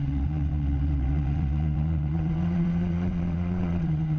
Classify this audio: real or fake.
fake